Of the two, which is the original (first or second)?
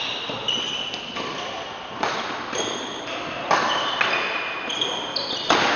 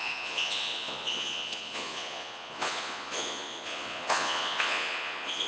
first